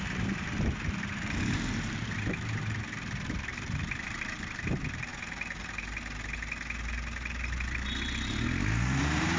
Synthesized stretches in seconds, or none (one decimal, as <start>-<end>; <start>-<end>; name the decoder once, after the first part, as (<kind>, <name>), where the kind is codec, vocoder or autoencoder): 0.0-5.1 (vocoder, BigVGAN v2); 9.0-9.4

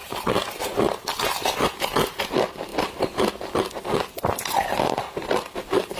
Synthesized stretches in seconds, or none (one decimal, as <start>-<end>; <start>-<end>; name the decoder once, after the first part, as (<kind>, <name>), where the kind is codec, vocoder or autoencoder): 0.0-2.2 (vocoder, BigVGAN v2)

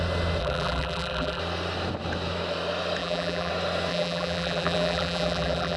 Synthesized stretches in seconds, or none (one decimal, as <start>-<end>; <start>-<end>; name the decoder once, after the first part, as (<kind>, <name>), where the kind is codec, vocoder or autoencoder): 0.4-1.4 (vocoder, BigVGAN v2); 3.0-3.5; 3.9-5.8

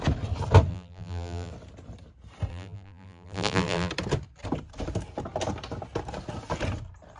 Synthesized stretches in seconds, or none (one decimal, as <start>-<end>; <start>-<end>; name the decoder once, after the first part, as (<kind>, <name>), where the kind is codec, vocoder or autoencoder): 0.7-1.5 (vocoder, BigVGAN v2); 2.5-3.9

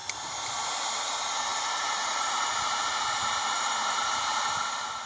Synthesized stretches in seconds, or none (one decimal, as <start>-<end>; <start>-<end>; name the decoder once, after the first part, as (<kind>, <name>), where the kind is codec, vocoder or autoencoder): 1.0-5.1 (vocoder, BigVGAN v2)